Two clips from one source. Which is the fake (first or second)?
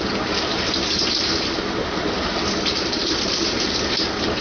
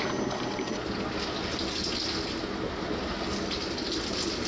first